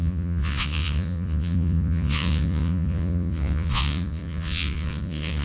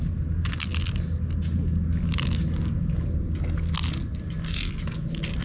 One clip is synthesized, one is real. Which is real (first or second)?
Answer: second